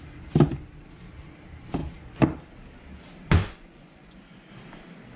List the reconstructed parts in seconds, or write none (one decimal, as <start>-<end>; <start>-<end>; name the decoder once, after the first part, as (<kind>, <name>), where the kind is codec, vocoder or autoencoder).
3.4-4.5 (vocoder, Vocos)